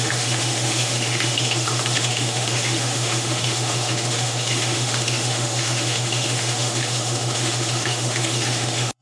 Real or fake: fake